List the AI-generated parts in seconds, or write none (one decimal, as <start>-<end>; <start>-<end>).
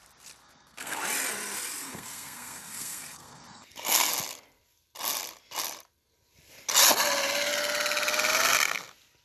0.4-1.0; 1.8-4.1